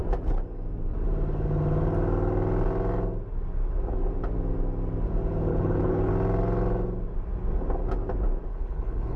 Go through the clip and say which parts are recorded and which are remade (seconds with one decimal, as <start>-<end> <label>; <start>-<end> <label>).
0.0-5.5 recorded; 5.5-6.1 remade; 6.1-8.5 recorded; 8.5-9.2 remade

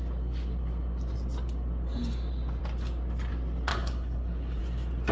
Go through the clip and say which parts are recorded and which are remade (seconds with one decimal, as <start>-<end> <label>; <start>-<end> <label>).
0.0-3.7 recorded; 3.7-4.6 remade; 4.6-5.1 recorded

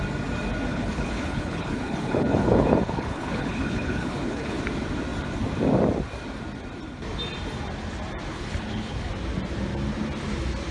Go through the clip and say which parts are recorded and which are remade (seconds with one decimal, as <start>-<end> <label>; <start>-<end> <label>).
0.0-0.7 recorded; 0.7-4.6 remade; 4.6-8.3 recorded; 8.3-9.1 remade; 9.1-10.7 recorded

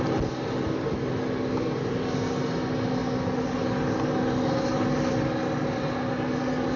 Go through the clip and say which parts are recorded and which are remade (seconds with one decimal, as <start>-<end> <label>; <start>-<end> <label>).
0.0-6.8 recorded

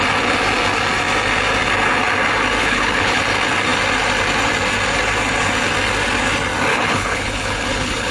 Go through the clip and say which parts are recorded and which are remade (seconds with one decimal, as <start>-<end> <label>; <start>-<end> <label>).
0.0-2.6 recorded; 2.6-3.2 remade; 3.2-6.7 recorded; 6.7-8.1 remade

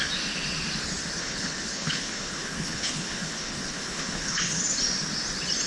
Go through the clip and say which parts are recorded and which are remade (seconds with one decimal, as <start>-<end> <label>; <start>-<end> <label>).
0.0-1.2 recorded; 1.2-4.6 remade; 4.6-5.7 recorded

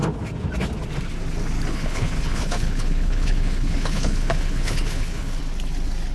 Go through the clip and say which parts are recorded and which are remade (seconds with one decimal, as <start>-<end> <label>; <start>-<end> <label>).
0.0-1.7 recorded; 1.7-5.4 remade; 5.4-6.1 recorded